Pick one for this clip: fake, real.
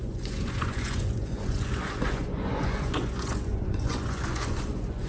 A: fake